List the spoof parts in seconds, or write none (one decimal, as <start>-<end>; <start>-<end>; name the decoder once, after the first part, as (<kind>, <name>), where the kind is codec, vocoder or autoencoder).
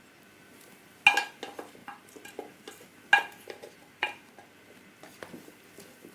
1.8-2.3 (vocoder, BigVGAN v2); 3.8-4.3